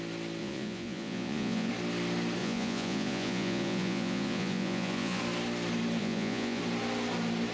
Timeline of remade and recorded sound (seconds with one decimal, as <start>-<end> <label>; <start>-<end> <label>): 0.0-0.4 recorded; 0.4-1.7 remade; 1.7-2.4 recorded; 2.4-5.2 remade; 5.2-6.0 recorded; 6.0-6.6 remade; 6.6-7.5 recorded